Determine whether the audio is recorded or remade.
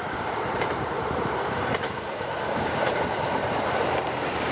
remade